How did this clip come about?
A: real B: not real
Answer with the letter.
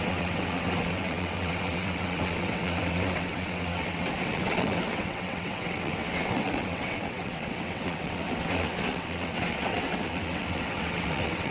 B